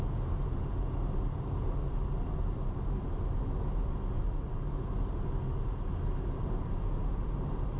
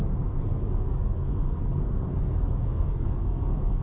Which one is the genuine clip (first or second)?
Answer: first